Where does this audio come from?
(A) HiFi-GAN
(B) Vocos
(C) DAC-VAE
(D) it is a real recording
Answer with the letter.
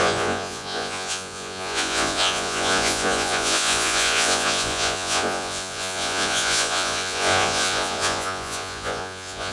B